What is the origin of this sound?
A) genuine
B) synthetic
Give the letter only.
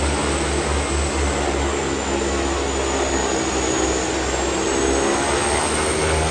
A